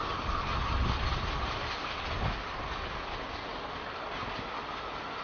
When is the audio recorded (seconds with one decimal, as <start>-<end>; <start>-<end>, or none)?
0.0-5.2